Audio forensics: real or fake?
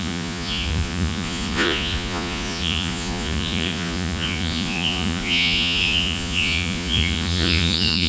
fake